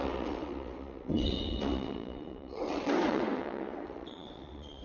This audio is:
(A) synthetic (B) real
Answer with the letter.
A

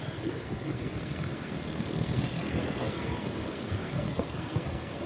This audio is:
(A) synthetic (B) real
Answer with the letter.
A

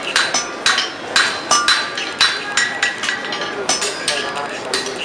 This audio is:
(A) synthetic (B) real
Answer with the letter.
B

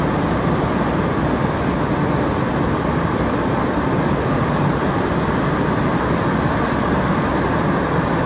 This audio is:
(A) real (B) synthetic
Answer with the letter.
A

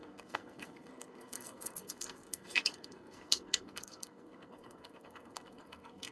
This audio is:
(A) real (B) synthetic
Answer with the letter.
B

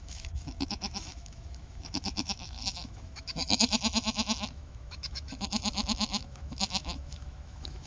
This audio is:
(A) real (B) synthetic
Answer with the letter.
B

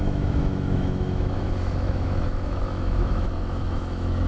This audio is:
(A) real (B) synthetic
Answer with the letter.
B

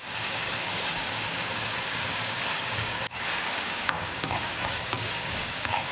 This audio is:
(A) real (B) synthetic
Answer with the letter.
B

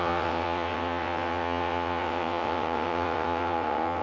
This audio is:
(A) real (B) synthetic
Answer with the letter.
B